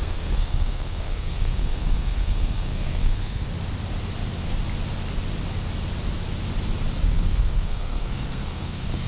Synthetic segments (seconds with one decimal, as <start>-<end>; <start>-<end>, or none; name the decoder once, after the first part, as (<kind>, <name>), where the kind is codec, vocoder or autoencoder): 0.0-3.5 (codec, SNAC); 7.1-9.1